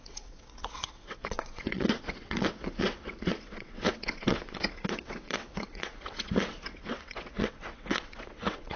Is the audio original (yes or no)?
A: no